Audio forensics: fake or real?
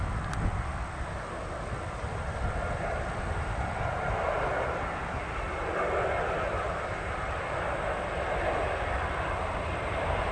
real